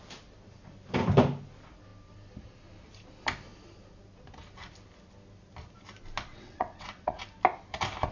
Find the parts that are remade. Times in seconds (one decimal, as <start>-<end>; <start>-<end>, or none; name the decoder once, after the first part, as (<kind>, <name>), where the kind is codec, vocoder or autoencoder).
6.3-7.2 (vocoder, WaveNeXt)